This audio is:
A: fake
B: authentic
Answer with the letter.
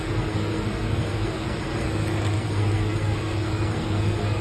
A